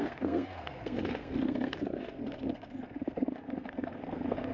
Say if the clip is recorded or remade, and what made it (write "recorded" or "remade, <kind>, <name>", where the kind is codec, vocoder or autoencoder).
remade, codec, SNAC